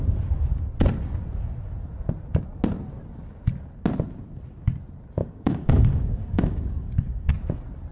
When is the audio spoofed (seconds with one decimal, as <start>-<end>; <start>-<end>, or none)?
5.2-7.3